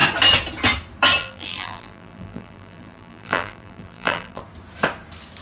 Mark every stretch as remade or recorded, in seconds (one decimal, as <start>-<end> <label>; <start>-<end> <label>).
0.0-1.2 recorded; 1.2-4.4 remade; 4.4-5.4 recorded